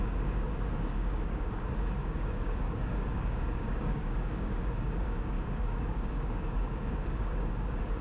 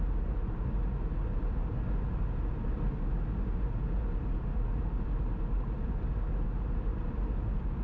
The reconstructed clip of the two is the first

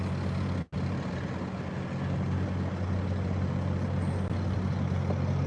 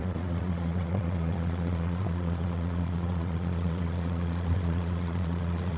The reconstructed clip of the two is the second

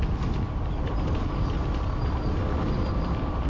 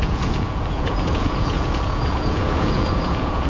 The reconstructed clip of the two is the second